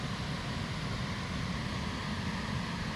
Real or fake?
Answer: real